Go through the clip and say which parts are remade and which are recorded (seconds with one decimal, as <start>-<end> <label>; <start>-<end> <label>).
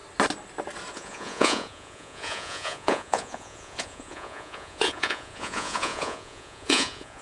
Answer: 0.0-0.9 recorded; 0.9-7.2 remade